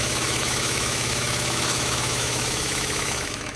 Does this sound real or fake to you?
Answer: fake